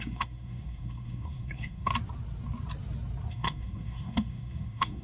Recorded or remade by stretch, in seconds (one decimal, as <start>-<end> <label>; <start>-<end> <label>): 0.0-1.9 remade; 1.9-3.3 recorded; 3.3-5.0 remade